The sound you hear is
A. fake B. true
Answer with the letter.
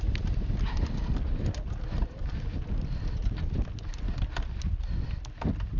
B